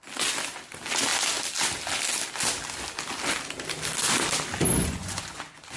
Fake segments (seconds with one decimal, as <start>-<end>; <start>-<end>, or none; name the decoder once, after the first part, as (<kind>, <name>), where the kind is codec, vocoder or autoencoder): 4.8-5.8 (vocoder, Vocos)